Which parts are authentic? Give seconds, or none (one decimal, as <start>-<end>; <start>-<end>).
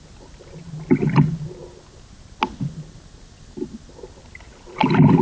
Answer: 0.0-5.2